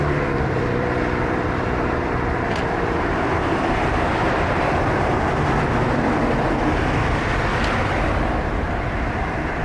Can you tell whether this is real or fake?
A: fake